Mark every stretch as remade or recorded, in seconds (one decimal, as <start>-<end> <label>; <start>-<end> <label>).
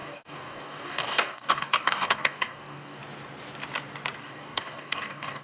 0.0-3.0 remade; 3.0-4.2 recorded; 4.2-5.4 remade